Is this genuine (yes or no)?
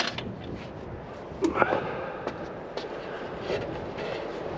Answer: yes